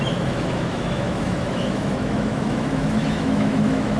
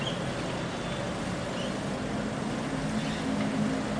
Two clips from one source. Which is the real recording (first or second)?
second